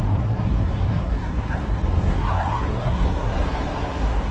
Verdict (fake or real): fake